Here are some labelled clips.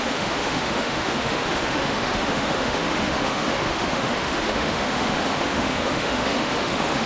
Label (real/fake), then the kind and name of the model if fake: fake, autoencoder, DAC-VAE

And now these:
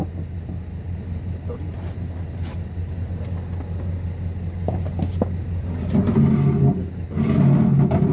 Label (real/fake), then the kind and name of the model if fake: real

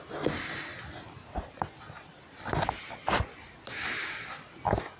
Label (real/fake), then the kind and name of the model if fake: real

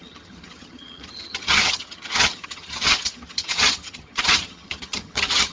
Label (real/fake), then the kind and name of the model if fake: fake, vocoder, HiFi-GAN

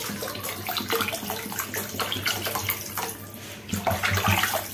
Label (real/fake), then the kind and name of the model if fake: real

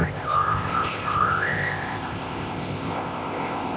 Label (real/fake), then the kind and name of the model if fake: fake, codec, ZipCodec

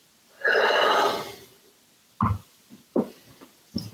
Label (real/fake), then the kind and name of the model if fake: real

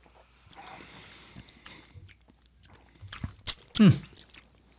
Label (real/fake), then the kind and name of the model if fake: real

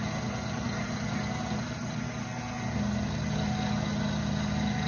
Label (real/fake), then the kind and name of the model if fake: real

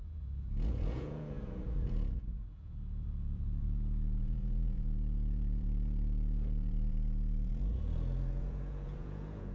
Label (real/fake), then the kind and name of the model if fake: fake, vocoder, Vocos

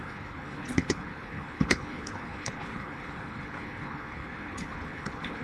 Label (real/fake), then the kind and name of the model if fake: fake, codec, HILCodec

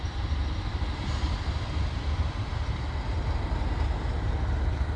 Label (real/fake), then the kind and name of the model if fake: real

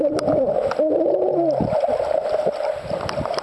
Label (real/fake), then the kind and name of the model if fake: real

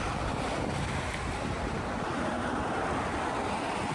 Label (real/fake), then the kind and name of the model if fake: real